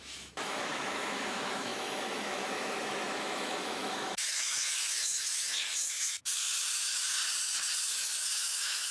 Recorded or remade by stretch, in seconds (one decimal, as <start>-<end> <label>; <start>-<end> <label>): 0.0-7.2 remade; 7.2-7.8 recorded; 7.8-8.9 remade